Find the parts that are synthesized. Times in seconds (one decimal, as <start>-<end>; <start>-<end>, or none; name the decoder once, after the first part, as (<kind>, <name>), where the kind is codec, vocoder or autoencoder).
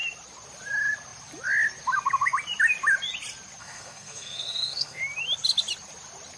3.6-5.0 (codec, SNAC)